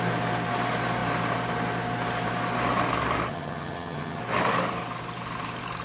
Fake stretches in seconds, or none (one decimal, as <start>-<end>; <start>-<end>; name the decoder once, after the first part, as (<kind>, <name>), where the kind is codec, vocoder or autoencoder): 3.3-4.2 (vocoder, HiFi-GAN)